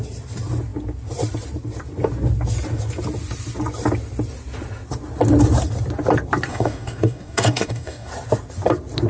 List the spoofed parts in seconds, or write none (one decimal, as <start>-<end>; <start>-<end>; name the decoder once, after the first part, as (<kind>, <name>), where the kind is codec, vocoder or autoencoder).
6.5-8.1 (codec, DAC)